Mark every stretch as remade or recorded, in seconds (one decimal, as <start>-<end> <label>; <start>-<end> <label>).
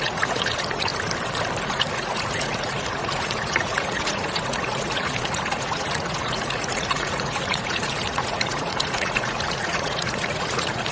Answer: 0.0-0.9 remade; 0.9-1.6 recorded; 1.6-10.9 remade